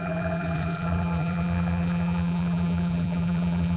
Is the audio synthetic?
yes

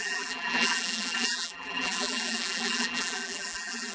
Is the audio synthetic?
yes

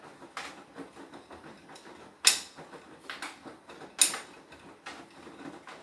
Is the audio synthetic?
no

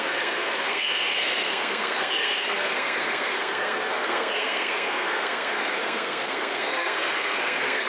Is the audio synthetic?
yes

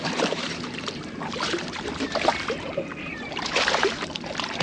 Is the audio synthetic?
yes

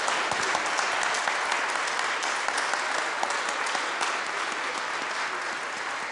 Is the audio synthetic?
no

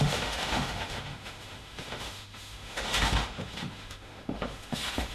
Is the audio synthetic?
yes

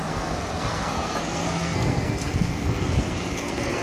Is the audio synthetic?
yes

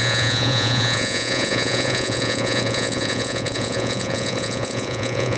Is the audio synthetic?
yes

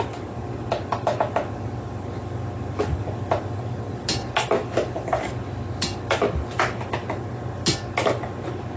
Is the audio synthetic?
no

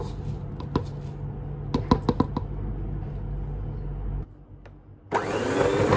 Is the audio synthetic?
no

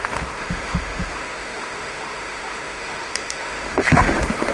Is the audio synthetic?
yes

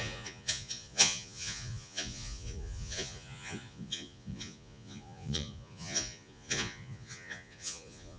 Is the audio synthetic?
yes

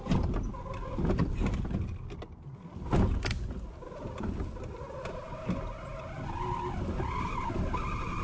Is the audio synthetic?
no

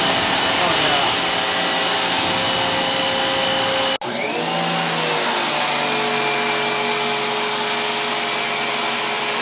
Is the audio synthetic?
no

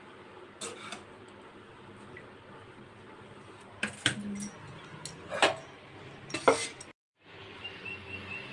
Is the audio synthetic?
no